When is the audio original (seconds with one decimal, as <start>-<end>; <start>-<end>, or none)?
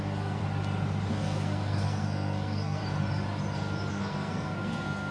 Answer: 0.4-1.1; 2.8-3.9